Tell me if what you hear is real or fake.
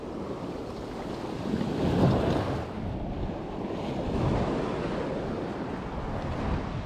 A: real